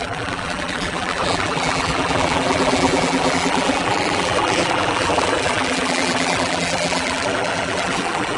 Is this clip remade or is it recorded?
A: remade